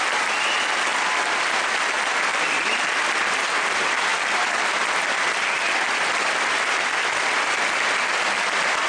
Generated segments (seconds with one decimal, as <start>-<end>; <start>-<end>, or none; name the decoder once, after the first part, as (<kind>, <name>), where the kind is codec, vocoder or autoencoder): 0.9-1.9 (vocoder, BigVGAN v2); 2.3-3.0; 4.1-7.6